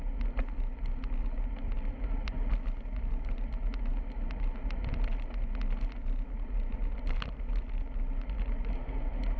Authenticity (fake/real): real